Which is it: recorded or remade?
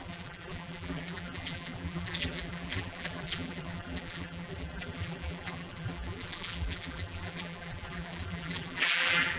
remade